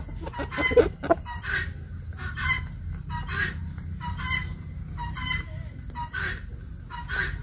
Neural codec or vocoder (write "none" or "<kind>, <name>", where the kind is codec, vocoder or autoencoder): none